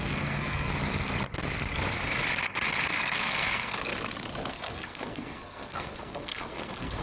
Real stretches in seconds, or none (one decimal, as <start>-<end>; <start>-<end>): 0.7-2.9; 3.9-4.5